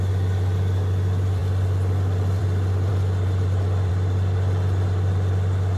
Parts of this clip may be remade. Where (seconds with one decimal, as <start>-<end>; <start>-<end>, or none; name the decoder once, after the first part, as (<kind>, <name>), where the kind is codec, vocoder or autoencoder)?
none